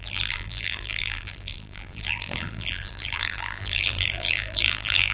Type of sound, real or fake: fake